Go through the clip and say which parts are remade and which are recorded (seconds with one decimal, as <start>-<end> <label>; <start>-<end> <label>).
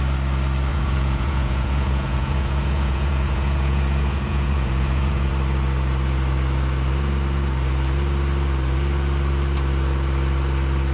0.0-0.7 recorded; 0.7-5.3 remade; 5.3-10.9 recorded